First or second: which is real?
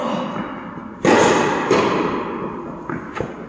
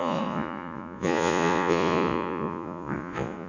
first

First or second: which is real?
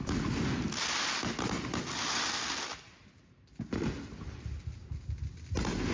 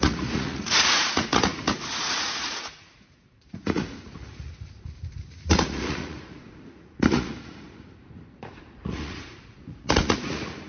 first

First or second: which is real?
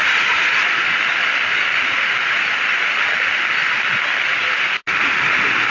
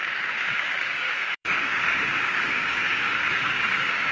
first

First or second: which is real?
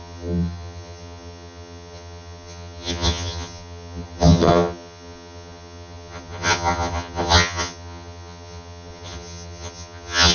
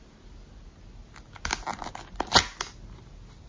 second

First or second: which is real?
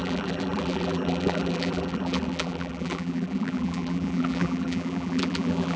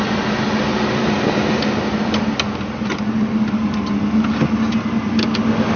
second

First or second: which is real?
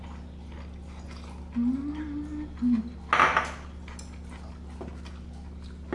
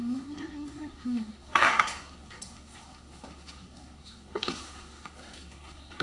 first